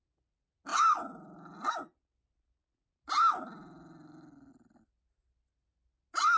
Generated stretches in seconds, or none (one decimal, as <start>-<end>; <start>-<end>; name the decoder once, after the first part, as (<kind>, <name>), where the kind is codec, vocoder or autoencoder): none

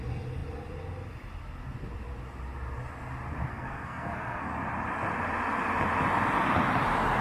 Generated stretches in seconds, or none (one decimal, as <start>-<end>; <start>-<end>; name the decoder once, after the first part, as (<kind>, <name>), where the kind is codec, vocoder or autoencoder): 3.5-4.5 (codec, SNAC)

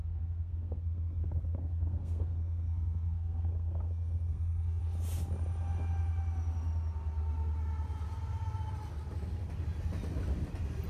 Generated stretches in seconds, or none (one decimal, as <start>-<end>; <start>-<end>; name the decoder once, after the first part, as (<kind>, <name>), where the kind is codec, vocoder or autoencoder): 0.0-4.8 (codec, SNAC)